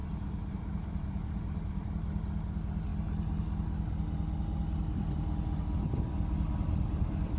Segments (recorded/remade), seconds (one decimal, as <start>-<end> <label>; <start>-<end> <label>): 0.0-1.9 remade; 1.9-7.4 recorded